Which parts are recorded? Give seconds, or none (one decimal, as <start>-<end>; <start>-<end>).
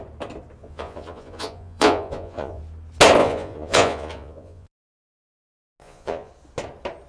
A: 0.0-0.6; 2.6-3.2; 4.8-5.8; 6.3-7.1